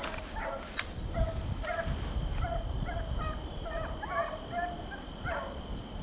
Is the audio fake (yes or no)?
no